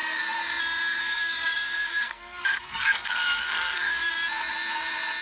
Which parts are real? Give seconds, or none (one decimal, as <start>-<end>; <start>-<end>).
0.0-1.0; 4.1-5.2